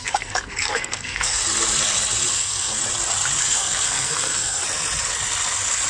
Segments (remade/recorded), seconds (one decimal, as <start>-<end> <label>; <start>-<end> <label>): 0.0-1.4 remade; 1.4-2.3 recorded; 2.3-2.8 remade; 2.8-3.4 recorded; 3.4-4.6 remade; 4.6-5.9 recorded